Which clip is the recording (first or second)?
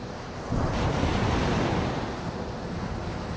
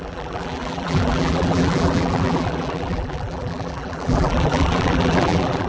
first